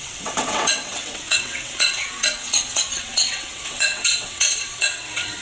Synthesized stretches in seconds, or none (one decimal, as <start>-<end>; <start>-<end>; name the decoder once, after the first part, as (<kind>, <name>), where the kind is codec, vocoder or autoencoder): 0.0-5.4 (vocoder, WaveNeXt)